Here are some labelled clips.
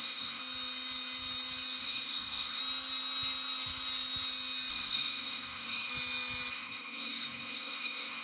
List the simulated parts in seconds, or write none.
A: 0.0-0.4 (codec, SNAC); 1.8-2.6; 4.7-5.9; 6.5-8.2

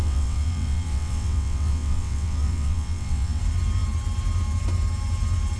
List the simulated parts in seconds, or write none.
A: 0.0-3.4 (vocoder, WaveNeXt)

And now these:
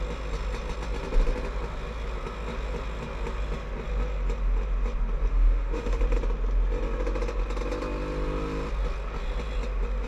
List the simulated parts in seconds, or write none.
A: 5.3-6.0 (autoencoder, DAC-VAE)

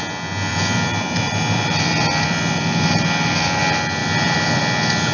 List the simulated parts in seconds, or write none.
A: 0.5-3.6 (vocoder, BigVGAN v2); 4.0-4.6

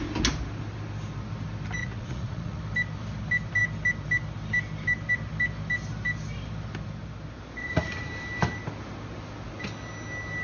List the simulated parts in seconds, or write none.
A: 1.8-2.6 (vocoder, Vocos); 7.6-8.1

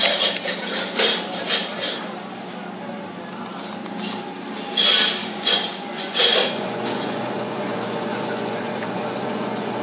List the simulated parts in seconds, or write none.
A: 5.2-9.8 (vocoder, Vocos)

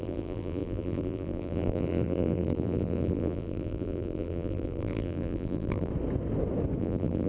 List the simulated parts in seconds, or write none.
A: 0.0-5.9 (vocoder, BigVGAN v2); 6.8-7.3